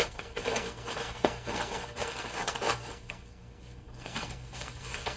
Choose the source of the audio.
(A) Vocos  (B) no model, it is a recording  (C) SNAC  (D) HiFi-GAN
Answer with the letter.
C